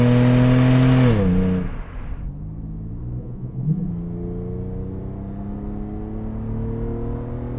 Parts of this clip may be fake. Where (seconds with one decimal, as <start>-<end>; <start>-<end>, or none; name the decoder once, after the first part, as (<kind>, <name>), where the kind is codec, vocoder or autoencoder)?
3.2-3.9 (vocoder, Vocos)